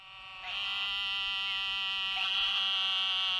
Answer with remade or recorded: recorded